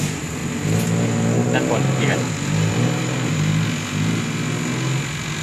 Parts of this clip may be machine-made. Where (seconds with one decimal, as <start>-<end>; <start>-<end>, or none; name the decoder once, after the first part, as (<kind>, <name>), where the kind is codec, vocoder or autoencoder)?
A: 0.0-0.4 (vocoder, BigVGAN v2); 2.0-3.5